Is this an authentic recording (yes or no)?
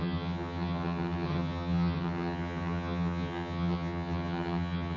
no